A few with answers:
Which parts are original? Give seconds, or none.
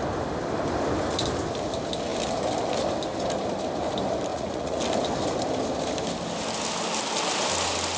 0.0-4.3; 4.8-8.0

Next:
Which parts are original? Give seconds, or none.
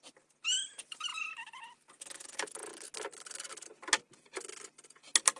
0.0-5.4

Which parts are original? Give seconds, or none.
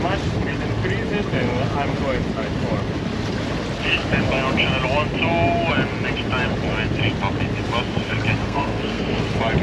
0.0-8.4; 9.2-9.6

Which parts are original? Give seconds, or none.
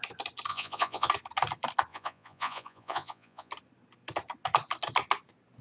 0.0-0.5; 1.1-1.9; 3.5-5.6